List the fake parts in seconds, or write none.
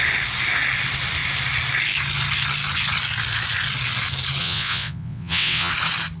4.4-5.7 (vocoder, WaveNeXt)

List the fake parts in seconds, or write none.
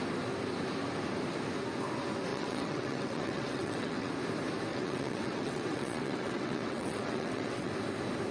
2.3-4.1 (vocoder, WaveNeXt); 4.7-7.7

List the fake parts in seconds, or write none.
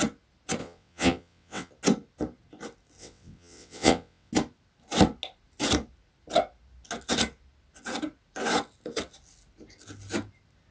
0.6-1.7 (vocoder, WaveNeXt); 3.0-4.3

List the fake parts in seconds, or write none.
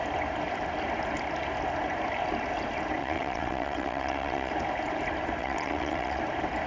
3.0-4.5 (vocoder, WaveNeXt); 5.4-6.2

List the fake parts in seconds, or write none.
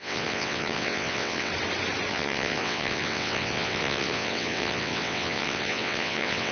0.0-1.5 (vocoder, WaveNeXt); 2.1-6.5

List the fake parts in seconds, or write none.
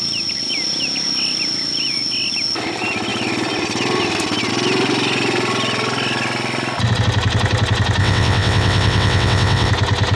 8.0-9.7 (vocoder, WaveNeXt)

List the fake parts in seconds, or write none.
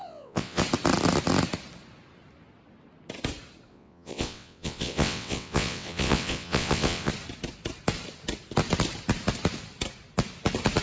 0.0-0.6 (vocoder, WaveNeXt); 3.7-7.1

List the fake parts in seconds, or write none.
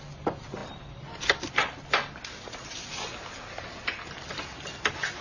none